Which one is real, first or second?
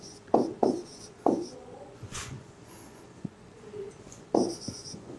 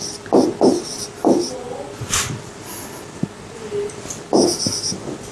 second